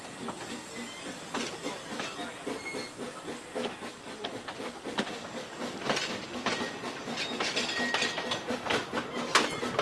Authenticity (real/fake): real